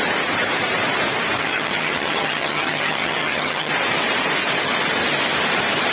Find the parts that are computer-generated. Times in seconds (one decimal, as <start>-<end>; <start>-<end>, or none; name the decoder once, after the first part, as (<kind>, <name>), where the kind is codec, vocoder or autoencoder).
1.4-3.7 (vocoder, HiFi-GAN)